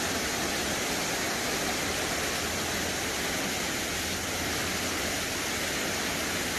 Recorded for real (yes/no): yes